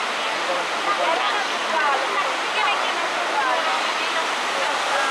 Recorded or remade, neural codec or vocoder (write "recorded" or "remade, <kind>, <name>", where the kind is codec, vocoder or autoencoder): recorded